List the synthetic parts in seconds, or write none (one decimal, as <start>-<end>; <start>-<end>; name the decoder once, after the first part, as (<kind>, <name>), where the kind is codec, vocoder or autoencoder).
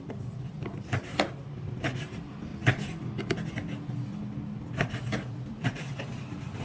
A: 0.0-2.5 (vocoder, BigVGAN v2); 4.6-6.6